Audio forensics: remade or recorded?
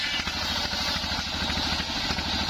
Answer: recorded